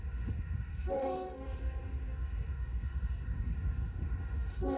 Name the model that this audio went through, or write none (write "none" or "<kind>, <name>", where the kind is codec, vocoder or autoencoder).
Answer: autoencoder, DAC-VAE